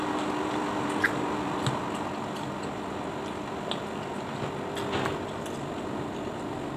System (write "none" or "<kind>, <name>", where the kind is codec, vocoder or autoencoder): none